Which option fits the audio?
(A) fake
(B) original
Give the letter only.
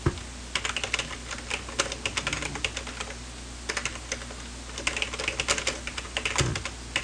B